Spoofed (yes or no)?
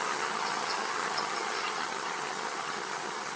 yes